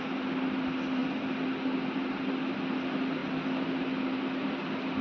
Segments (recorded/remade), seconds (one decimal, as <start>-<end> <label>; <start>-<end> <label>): 0.0-5.0 recorded